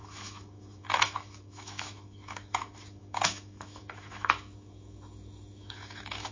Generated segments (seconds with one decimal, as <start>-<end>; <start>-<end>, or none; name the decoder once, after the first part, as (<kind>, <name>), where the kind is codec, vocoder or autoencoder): 0.0-6.3 (autoencoder, DAC-VAE)